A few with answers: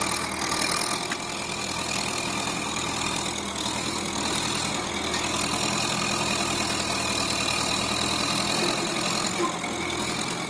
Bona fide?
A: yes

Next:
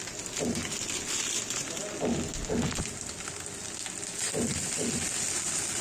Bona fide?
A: yes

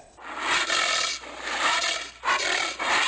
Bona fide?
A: yes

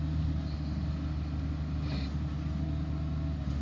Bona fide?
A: yes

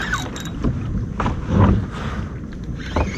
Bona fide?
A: yes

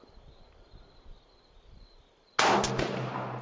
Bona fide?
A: yes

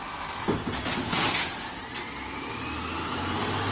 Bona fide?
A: yes